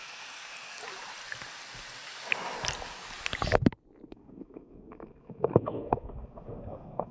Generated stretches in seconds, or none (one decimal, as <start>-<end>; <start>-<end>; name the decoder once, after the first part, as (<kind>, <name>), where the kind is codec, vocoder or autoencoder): 0.0-0.8 (codec, SNAC); 4.1-7.1